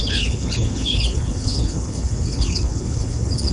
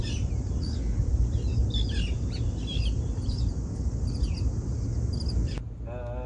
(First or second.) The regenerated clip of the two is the first